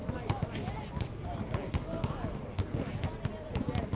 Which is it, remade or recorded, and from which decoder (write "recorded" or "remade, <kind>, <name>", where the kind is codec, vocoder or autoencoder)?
recorded